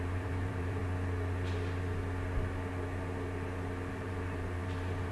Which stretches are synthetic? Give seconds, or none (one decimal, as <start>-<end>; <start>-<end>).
0.0-0.8; 3.9-5.1